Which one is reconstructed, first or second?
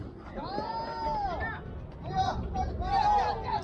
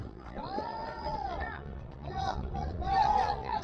second